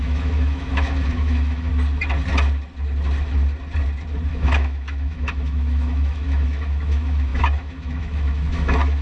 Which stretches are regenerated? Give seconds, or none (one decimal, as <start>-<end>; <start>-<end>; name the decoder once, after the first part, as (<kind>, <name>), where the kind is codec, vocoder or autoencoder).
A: 0.0-1.7 (autoencoder, DAC-VAE); 4.3-9.0